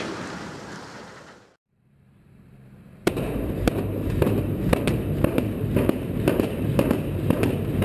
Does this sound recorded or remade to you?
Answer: remade